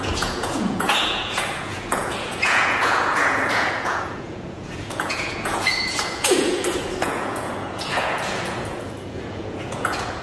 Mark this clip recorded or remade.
remade